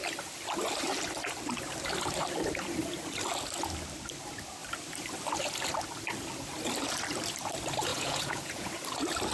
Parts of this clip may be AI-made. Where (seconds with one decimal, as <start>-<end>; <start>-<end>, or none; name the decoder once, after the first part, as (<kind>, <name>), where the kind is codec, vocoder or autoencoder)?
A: 7.9-8.7 (vocoder, Vocos)